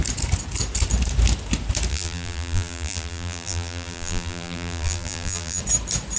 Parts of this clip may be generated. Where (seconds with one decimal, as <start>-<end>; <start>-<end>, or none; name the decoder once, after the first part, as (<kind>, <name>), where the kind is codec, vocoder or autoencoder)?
1.9-5.6 (vocoder, BigVGAN v2)